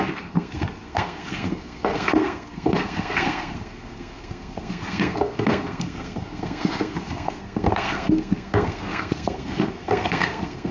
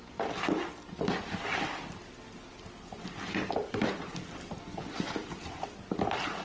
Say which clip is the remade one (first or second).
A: first